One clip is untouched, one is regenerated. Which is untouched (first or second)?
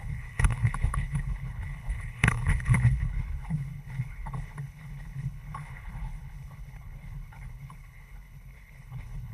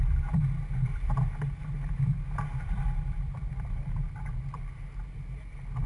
second